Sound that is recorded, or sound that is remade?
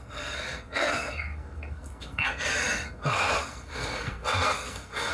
remade